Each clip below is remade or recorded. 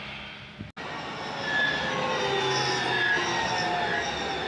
recorded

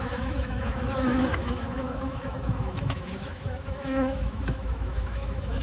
remade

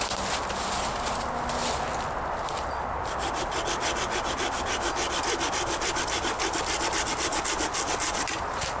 recorded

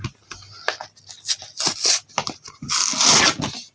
recorded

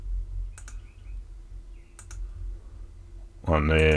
recorded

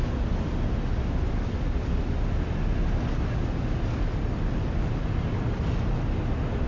recorded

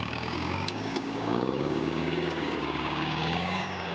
remade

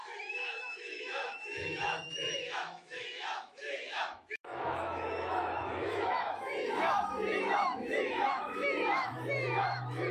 remade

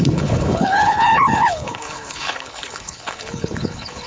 remade